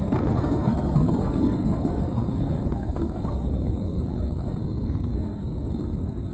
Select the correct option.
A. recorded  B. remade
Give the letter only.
B